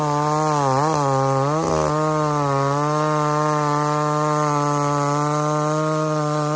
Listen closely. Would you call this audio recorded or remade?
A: recorded